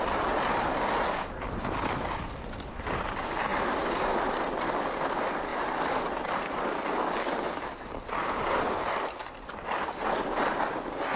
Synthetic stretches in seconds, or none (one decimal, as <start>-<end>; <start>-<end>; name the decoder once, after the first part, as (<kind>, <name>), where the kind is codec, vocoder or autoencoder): none